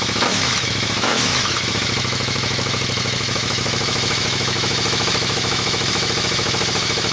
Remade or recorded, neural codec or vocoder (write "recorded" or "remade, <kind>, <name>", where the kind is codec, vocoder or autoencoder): remade, autoencoder, DAC-VAE